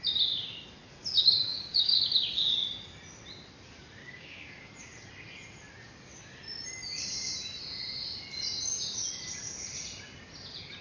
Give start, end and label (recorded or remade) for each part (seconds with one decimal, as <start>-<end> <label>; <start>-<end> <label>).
0.0-1.5 recorded; 1.5-2.0 remade; 2.0-4.0 recorded; 4.0-4.7 remade; 4.7-10.8 recorded